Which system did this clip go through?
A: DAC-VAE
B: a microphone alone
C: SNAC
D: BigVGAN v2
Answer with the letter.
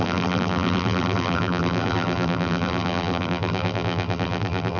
D